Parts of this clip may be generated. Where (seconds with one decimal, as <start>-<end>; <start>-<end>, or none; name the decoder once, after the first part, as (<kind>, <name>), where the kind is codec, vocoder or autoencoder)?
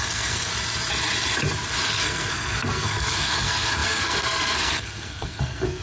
0.0-0.5 (codec, SNAC); 1.9-5.8